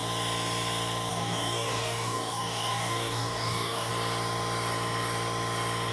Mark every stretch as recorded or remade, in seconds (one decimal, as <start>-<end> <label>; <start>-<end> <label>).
0.0-1.1 recorded; 1.1-3.9 remade; 3.9-5.9 recorded